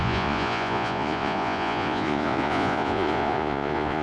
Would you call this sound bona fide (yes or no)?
no